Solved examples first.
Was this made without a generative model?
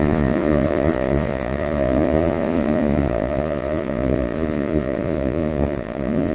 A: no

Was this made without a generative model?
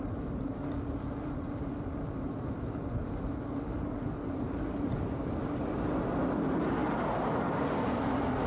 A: yes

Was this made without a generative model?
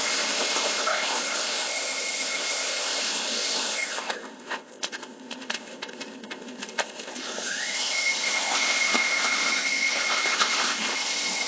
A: no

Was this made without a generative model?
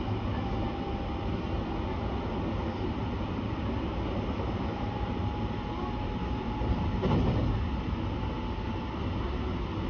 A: yes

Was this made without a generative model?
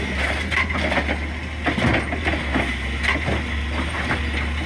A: yes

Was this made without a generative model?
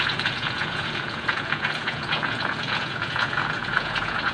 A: no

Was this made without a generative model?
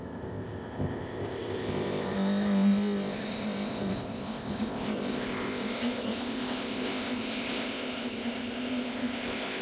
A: no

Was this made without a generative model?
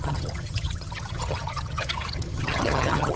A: no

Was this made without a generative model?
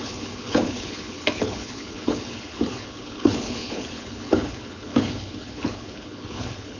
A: no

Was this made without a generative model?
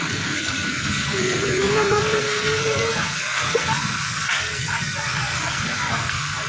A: no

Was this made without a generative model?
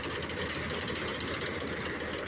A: yes